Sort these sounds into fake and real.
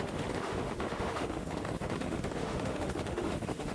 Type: fake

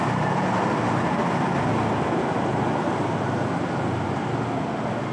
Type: real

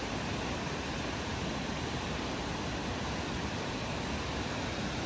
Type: real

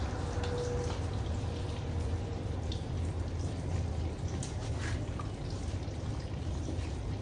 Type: real